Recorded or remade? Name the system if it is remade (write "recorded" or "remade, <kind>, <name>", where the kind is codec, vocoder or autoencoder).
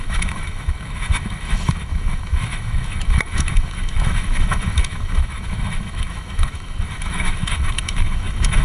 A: remade, autoencoder, DAC-VAE